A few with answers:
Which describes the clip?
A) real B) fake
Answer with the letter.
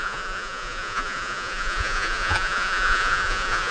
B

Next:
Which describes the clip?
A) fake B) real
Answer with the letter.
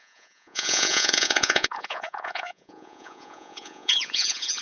A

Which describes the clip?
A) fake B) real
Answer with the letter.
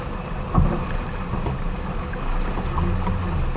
B